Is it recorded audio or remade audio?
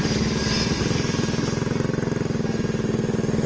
recorded